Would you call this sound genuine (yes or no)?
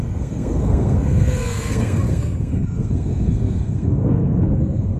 no